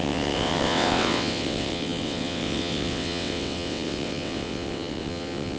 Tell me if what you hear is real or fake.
fake